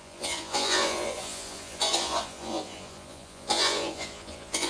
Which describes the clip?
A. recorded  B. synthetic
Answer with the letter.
B